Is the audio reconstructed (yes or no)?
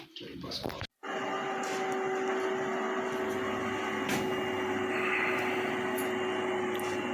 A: no